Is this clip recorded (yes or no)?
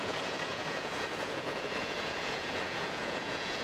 no